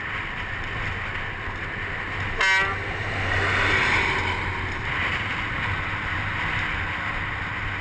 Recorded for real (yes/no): yes